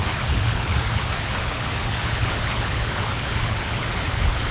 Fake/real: fake